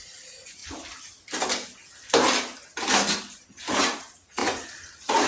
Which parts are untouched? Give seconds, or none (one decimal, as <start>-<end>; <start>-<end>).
0.6-3.8